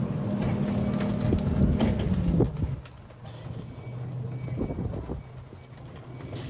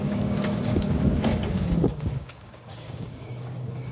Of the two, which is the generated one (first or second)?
second